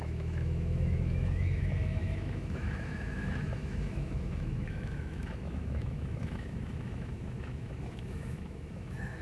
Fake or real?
fake